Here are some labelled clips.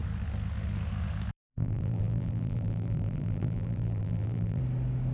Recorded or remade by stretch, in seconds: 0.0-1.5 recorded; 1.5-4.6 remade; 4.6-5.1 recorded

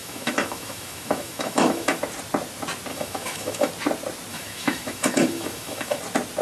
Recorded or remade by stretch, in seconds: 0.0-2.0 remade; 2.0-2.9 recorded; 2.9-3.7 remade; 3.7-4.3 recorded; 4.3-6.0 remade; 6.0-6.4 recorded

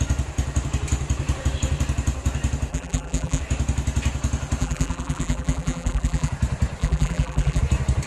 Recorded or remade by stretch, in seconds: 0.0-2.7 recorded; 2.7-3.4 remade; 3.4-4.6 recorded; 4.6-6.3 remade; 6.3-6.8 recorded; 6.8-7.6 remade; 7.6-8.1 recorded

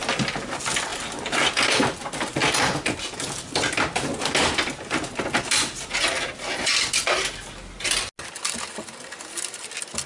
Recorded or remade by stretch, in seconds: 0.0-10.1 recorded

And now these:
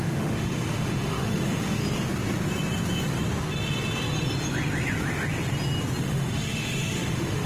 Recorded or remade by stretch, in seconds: 0.0-1.8 remade; 1.8-6.0 recorded; 6.0-7.5 remade